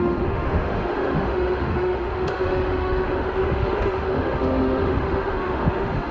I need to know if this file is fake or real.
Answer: fake